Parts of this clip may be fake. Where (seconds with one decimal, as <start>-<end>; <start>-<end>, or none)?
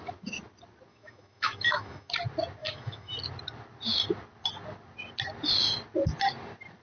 0.9-2.1; 2.6-3.1